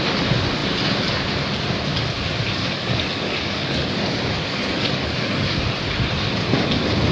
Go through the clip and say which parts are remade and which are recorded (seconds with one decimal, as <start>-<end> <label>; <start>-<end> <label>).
0.0-2.6 recorded; 2.6-5.7 remade; 5.7-7.1 recorded